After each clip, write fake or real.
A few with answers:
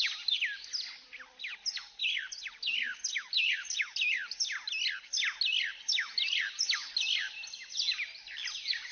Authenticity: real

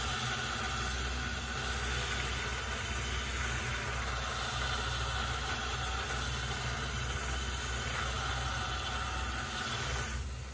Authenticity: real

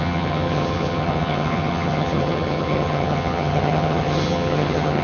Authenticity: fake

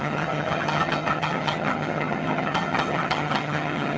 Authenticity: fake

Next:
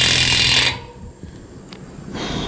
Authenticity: real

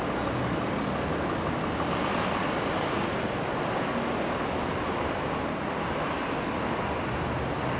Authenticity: real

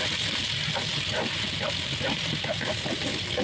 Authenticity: real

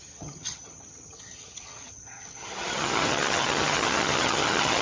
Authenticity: fake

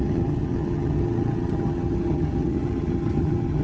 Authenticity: fake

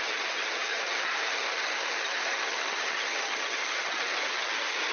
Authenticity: fake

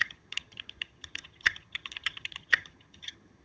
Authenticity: fake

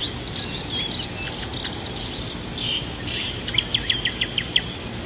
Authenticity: real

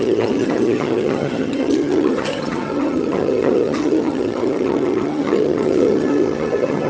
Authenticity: fake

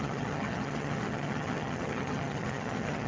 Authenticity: fake